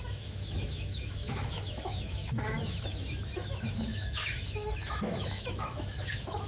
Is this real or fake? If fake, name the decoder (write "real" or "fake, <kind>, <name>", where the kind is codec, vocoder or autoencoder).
fake, autoencoder, DAC-VAE